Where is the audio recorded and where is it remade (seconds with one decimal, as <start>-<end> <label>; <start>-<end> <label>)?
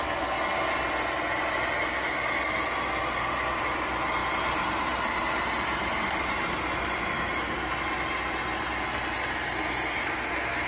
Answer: 0.0-4.2 recorded; 4.2-7.1 remade; 7.1-10.7 recorded